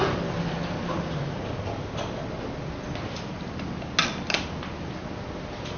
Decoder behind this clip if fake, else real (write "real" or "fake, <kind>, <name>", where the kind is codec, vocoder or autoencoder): real